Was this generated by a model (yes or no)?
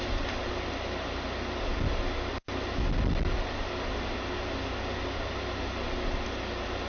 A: no